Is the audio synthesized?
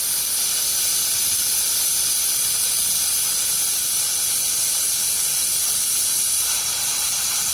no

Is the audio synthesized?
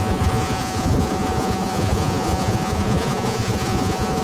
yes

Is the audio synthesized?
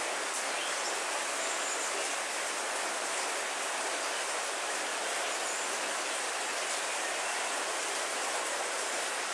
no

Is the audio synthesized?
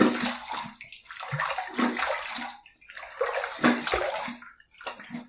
no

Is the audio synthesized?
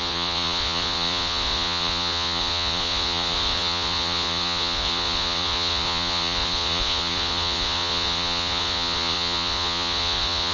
yes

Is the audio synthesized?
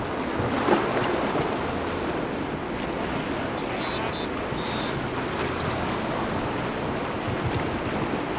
no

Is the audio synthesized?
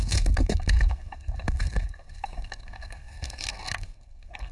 yes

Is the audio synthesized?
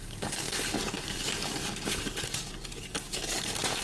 yes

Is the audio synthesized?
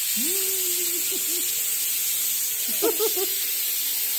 no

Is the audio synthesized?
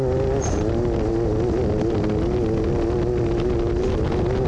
no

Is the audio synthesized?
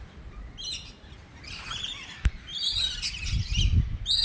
no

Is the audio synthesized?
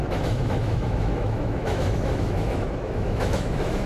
yes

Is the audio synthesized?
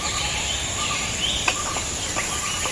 no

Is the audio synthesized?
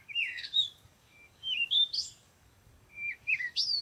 yes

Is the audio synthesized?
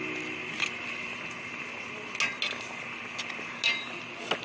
no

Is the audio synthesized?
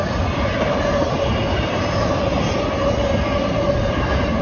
no